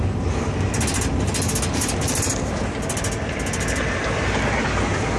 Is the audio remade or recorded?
recorded